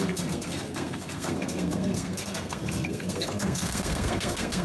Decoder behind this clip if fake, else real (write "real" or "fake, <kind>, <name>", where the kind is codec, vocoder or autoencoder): fake, codec, SNAC